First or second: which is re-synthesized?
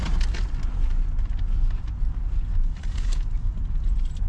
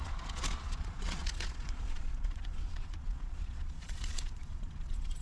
second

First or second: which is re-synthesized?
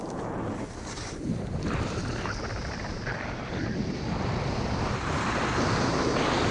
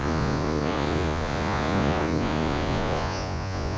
second